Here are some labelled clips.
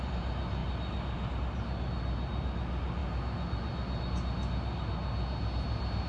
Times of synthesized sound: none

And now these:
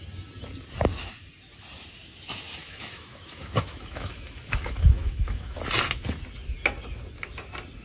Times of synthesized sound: 2.6-5.6 (autoencoder, DAC-VAE)

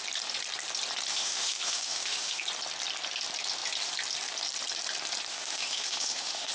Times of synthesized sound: 1.1-2.4 (autoencoder, DAC-VAE); 5.3-6.5

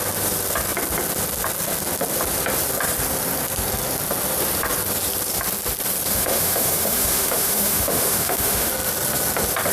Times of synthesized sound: 6.1-8.7 (autoencoder, DAC-VAE)

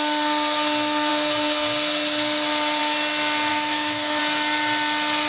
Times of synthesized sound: 3.5-4.2 (autoencoder, DAC-VAE)

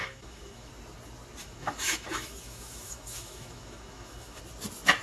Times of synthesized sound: 0.0-0.7 (autoencoder, DAC-VAE); 1.4-4.4

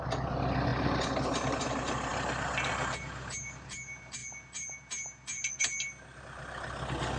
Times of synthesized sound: none